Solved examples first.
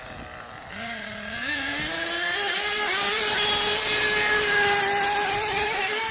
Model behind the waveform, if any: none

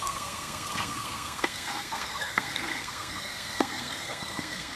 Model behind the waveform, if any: codec, SNAC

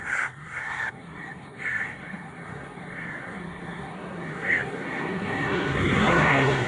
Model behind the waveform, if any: codec, SNAC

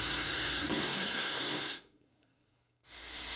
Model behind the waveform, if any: codec, SNAC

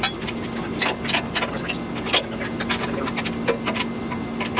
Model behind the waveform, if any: none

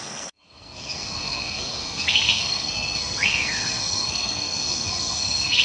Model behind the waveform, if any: codec, SNAC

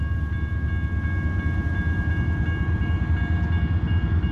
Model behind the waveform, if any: none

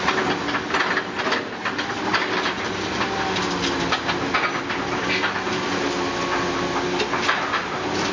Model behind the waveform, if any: none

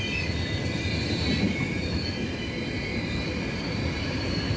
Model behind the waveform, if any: none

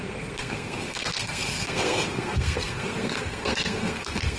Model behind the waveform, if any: codec, SNAC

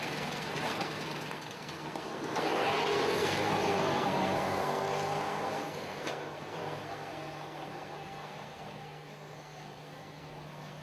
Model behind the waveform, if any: codec, SNAC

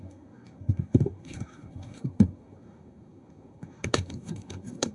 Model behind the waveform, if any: codec, SNAC